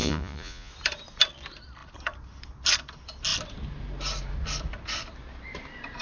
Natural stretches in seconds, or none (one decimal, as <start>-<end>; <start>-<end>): 0.7-6.0